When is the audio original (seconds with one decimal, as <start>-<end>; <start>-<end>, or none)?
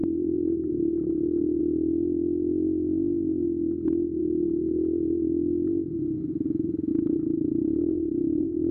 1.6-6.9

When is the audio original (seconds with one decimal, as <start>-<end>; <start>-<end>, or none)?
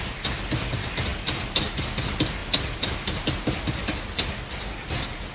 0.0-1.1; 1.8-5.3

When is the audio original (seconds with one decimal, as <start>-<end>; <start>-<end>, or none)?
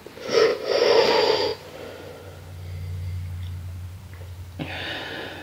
0.0-0.5; 1.1-5.4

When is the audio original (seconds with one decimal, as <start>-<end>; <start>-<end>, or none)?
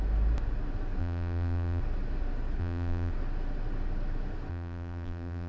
0.0-1.0; 1.8-2.6; 3.1-4.5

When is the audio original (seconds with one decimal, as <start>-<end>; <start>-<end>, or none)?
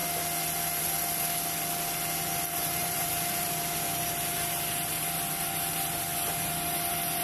0.0-2.8; 3.5-7.2